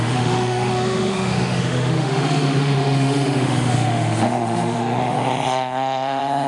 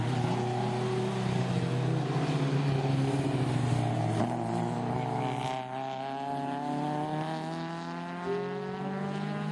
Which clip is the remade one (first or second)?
first